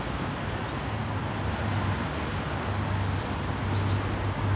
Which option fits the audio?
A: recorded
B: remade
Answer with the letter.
A